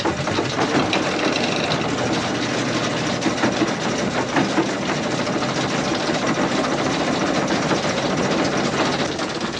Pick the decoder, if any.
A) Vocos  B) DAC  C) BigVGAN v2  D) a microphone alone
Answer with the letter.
D